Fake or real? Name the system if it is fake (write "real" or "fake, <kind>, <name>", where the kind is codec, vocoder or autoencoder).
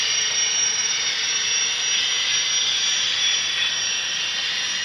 real